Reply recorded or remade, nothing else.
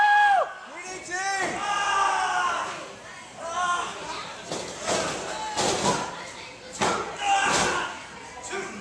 recorded